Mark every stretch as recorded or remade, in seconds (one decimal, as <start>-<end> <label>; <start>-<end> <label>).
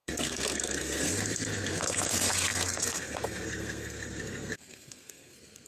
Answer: 0.0-5.7 remade